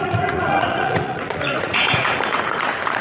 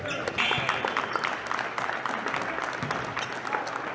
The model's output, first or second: first